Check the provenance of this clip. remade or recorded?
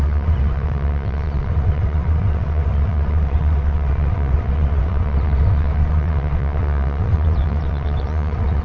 remade